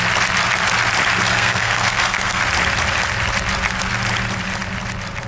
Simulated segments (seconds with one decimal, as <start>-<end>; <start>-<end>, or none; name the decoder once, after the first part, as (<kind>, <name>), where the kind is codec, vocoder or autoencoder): 1.3-2.4 (codec, SNAC)